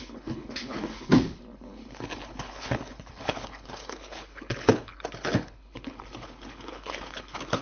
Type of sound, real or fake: fake